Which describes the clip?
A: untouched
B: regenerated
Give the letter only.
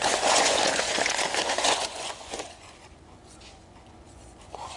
B